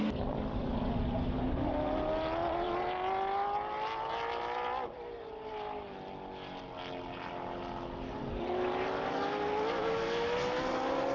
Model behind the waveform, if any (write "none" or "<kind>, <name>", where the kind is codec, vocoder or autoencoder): none